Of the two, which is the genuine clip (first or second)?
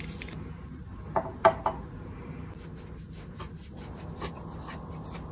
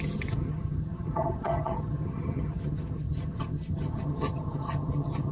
first